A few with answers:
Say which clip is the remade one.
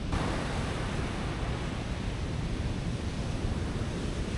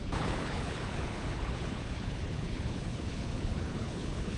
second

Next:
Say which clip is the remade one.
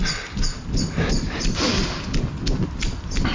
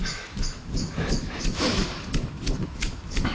second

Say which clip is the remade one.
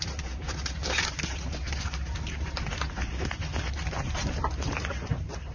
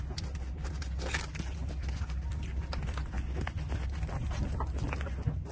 first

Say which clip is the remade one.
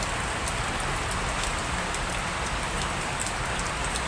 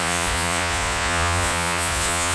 second